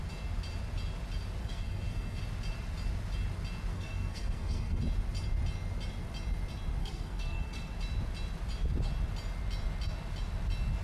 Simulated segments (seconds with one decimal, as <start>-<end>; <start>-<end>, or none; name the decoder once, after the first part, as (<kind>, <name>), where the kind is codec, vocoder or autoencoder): 1.4-2.2 (codec, SNAC); 3.7-4.8; 6.8-7.7